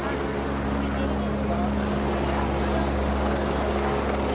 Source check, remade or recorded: recorded